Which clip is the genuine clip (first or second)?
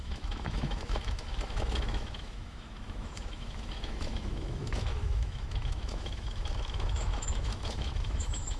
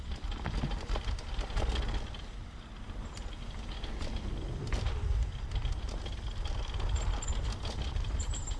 second